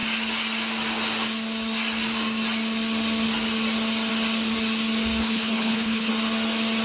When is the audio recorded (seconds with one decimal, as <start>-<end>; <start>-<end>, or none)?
0.0-5.2; 6.1-6.8